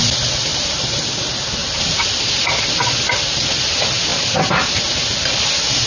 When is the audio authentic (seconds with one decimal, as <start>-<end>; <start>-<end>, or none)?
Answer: 0.0-0.5; 1.1-1.6; 2.3-5.9